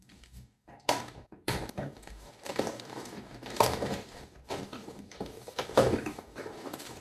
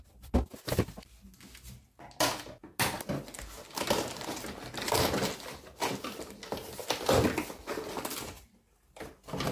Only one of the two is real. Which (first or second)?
second